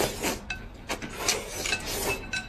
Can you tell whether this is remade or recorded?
recorded